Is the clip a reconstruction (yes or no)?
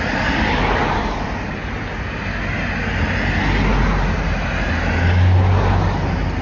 no